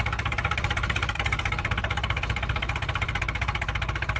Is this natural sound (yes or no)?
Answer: no